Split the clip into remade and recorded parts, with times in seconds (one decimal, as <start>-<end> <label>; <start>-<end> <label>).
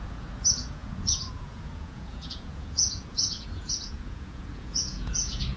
0.0-5.6 remade